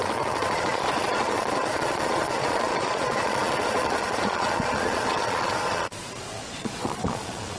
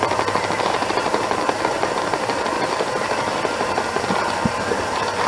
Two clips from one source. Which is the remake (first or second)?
first